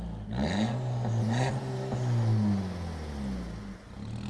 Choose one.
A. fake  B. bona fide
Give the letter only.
B